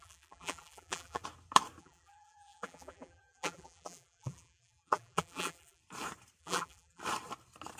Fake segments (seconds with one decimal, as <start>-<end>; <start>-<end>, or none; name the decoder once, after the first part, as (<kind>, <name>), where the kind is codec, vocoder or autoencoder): 0.0-1.2 (vocoder, BigVGAN v2); 1.8-5.8; 6.4-7.0